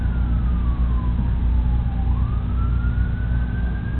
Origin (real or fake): real